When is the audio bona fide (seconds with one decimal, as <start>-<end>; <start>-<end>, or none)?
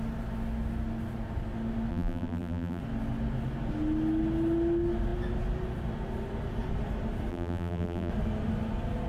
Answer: 0.0-1.9; 2.8-7.3; 8.1-9.1